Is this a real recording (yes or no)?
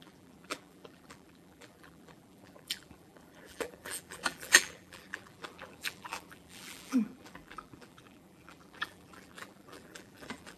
no